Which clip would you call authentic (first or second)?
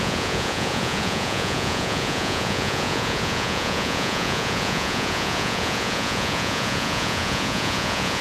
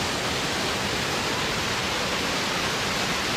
second